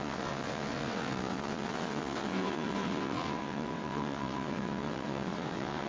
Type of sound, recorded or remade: remade